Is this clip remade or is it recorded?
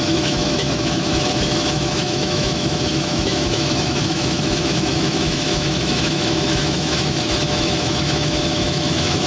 remade